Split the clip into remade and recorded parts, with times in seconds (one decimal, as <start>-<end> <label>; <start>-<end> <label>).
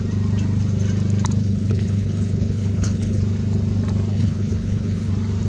0.0-1.4 recorded; 1.4-3.2 remade; 3.2-4.1 recorded; 4.1-5.1 remade; 5.1-5.5 recorded